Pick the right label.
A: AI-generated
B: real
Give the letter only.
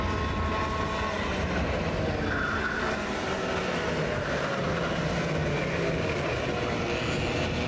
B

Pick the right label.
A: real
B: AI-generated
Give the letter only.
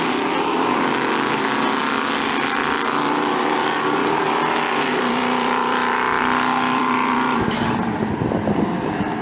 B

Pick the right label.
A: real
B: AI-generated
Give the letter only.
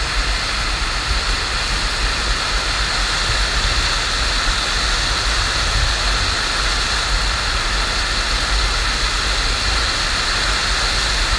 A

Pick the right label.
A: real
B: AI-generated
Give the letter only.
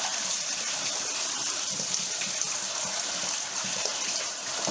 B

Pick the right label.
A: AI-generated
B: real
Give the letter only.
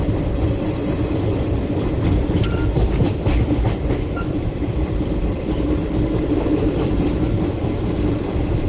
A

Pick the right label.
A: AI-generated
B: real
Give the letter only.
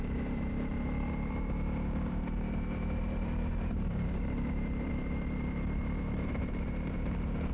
A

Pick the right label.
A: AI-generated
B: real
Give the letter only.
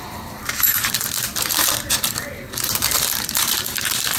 A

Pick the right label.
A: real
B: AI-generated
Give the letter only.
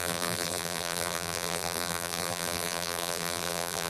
B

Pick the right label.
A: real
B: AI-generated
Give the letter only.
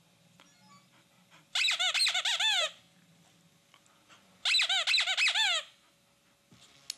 A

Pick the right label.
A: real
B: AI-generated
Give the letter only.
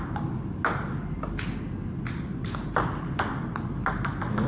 A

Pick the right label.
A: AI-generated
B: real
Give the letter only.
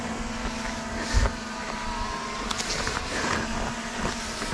B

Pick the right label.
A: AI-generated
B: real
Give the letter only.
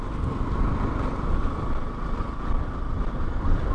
A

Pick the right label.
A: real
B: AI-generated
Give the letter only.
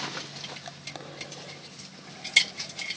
A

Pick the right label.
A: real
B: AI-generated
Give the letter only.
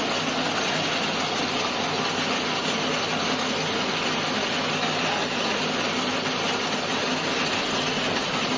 A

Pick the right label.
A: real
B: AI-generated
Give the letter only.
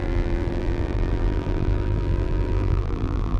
B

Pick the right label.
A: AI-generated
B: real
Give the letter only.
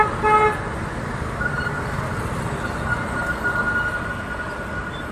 B